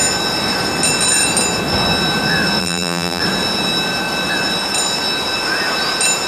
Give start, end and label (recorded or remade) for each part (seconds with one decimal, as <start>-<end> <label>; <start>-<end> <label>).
0.0-2.6 recorded; 2.6-3.2 remade; 3.2-6.3 recorded